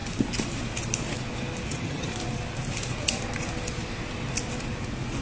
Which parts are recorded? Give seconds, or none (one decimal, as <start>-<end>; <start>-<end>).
0.0-1.7; 2.1-5.2